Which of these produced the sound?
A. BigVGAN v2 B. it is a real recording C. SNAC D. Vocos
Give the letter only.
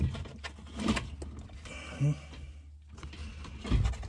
B